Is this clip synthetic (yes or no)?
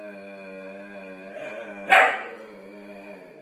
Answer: no